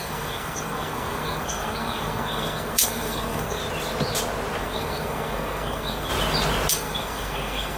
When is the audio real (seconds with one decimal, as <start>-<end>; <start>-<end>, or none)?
3.6-4.6; 6.1-6.7